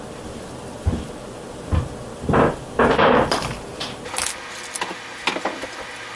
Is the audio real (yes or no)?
yes